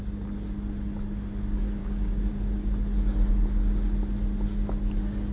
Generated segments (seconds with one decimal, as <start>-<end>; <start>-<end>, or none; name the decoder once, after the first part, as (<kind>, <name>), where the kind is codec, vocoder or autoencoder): 1.8-2.3 (codec, DAC)